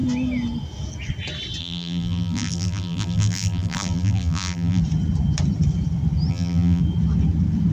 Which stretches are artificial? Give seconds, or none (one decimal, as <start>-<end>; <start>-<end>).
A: 1.6-4.8; 6.3-6.8